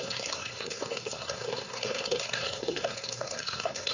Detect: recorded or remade remade